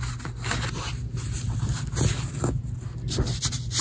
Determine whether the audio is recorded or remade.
recorded